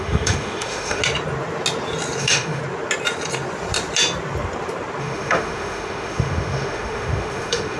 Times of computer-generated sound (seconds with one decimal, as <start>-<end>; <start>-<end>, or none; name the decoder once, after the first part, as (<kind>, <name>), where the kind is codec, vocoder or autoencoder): 0.0-1.0 (autoencoder, DAC-VAE); 2.2-2.6; 5.0-7.8